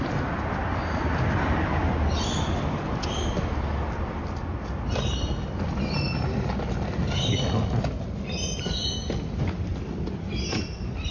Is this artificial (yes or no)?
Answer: no